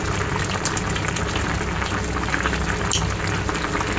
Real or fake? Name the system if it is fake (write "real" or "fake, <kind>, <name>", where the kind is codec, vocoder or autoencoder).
real